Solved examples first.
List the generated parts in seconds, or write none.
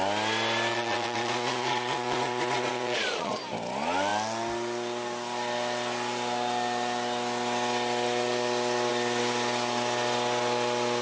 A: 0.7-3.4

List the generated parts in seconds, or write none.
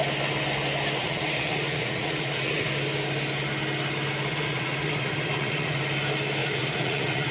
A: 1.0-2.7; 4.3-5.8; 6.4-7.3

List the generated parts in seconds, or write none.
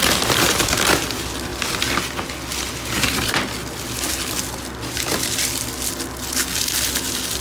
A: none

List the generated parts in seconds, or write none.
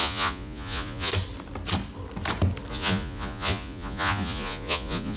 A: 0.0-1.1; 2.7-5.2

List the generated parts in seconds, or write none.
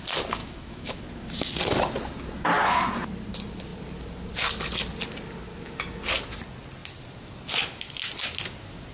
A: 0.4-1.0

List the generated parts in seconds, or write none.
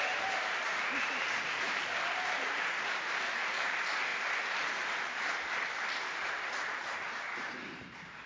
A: 0.0-4.1; 6.3-8.3